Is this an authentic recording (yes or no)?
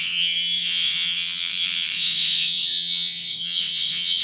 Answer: no